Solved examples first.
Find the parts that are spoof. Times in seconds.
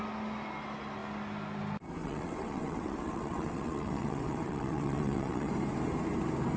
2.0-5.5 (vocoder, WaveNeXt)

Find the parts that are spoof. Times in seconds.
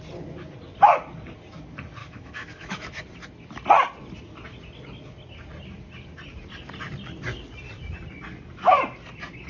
2.0-3.0 (autoencoder, DAC-VAE)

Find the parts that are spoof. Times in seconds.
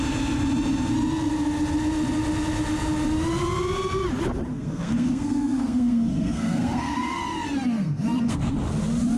4.5-8.5 (codec, SNAC)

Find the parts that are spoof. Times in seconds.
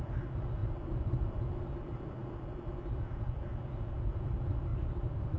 4.7-5.4 (vocoder, BigVGAN v2)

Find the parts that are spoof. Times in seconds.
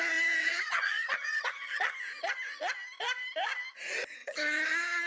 0.4-1.9 (vocoder, HiFi-GAN); 4.2-5.1